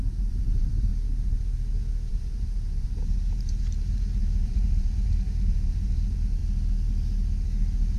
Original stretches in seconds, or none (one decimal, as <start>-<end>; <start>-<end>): 0.9-2.1; 6.4-8.0